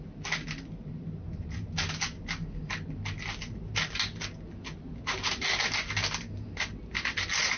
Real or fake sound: real